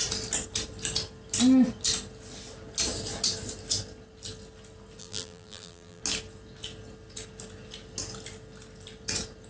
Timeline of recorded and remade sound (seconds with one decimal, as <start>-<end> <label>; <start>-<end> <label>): 0.0-5.0 recorded; 5.0-6.0 remade; 6.0-9.5 recorded

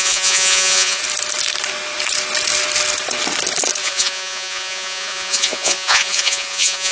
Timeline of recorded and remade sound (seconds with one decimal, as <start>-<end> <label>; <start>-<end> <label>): 0.0-1.0 remade; 1.0-3.8 recorded; 3.8-6.9 remade

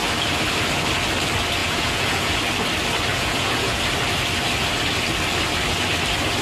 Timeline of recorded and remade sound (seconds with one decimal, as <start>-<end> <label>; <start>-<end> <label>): 0.0-1.6 recorded; 1.6-2.3 remade; 2.3-3.1 recorded; 3.1-3.8 remade; 3.8-6.4 recorded

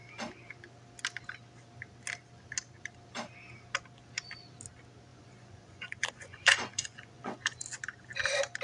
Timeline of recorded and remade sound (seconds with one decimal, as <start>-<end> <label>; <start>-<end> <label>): 0.0-5.1 recorded; 5.1-7.6 remade; 7.6-8.6 recorded

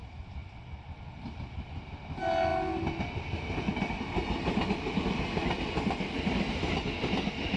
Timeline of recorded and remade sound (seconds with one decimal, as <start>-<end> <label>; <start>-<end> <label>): 0.0-7.6 recorded